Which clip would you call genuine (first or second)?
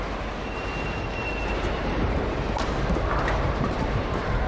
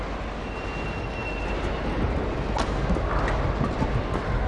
second